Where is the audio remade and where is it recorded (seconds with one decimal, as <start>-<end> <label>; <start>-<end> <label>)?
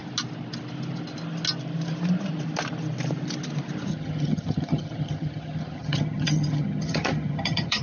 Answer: 0.0-3.9 recorded; 3.9-7.8 remade